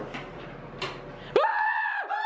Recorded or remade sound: recorded